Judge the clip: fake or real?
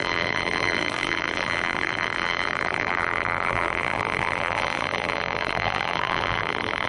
fake